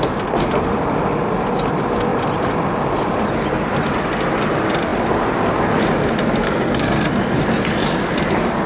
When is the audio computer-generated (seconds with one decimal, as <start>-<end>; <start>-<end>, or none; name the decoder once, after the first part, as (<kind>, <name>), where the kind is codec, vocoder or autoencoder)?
6.4-7.1 (codec, SNAC)

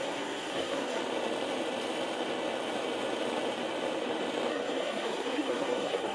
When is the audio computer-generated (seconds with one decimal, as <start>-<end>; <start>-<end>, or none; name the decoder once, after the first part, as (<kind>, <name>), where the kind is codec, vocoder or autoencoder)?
0.0-1.0 (codec, SNAC); 4.5-6.1